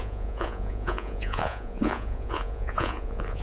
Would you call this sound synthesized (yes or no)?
yes